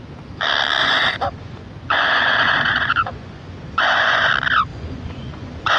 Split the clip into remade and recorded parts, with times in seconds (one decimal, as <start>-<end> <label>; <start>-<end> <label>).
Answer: 0.0-0.8 recorded; 0.8-4.3 remade; 4.3-4.7 recorded; 4.7-5.8 remade